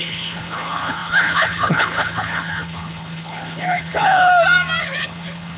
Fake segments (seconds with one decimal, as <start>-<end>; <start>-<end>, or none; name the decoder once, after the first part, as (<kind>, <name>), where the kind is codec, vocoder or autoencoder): 0.0-4.3 (codec, HILCodec); 4.8-5.6